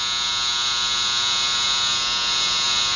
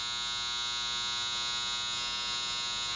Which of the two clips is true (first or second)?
second